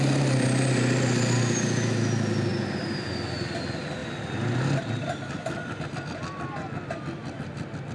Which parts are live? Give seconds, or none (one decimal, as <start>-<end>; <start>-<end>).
0.0-7.9